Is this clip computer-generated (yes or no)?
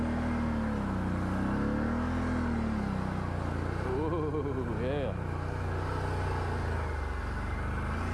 no